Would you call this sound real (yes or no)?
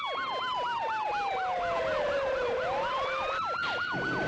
yes